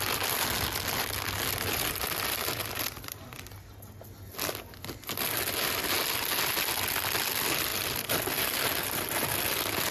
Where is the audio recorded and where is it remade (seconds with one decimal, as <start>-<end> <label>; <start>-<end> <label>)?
0.0-9.9 recorded